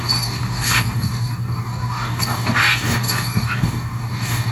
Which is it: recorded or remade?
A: remade